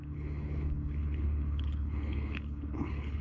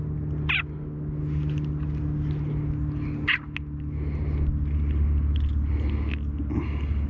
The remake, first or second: first